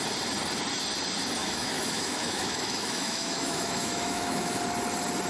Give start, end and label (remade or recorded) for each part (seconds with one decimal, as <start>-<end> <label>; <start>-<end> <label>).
0.0-1.4 recorded; 1.4-4.6 remade; 4.6-5.3 recorded